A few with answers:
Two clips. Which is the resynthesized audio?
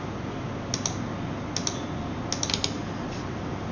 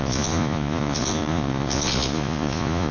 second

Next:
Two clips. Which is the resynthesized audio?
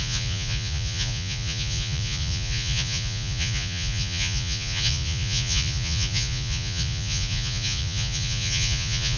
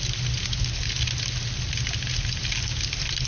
first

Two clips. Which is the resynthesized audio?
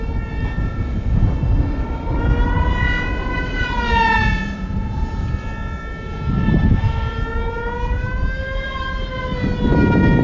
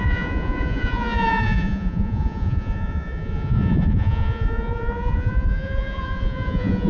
second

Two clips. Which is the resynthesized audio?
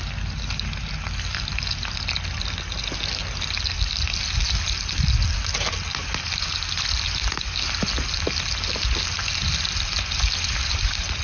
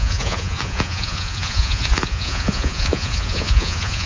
second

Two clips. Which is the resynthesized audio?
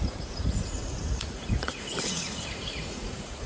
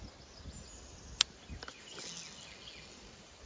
first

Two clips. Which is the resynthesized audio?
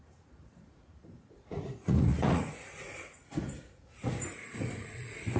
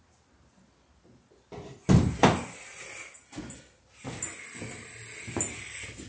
first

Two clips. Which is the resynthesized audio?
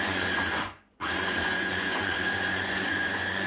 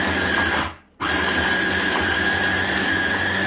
first